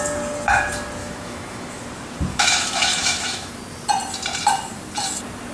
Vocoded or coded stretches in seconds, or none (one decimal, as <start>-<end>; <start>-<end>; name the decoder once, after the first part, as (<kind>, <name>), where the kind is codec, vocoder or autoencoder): 1.0-1.8 (autoencoder, DAC-VAE); 2.3-3.5